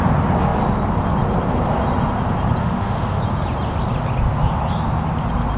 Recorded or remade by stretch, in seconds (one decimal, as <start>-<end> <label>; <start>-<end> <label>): 0.0-2.6 recorded; 2.6-3.2 remade; 3.2-5.6 recorded